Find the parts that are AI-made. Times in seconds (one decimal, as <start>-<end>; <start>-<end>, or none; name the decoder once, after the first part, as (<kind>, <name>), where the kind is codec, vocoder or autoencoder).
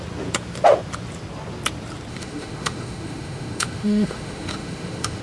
2.1-5.2 (autoencoder, DAC-VAE)